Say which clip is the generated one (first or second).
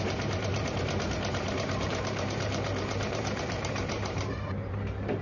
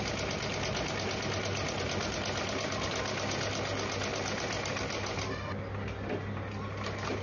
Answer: first